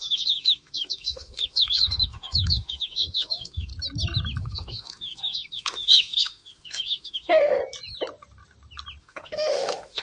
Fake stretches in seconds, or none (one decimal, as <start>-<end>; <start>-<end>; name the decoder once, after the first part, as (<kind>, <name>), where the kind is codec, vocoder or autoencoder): 0.0-3.7 (autoencoder, DAC-VAE); 4.4-7.6; 9.0-10.0